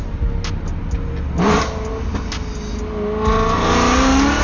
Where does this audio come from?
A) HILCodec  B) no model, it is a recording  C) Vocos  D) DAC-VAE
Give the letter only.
B